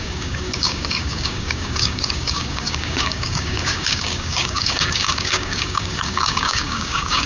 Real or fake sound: fake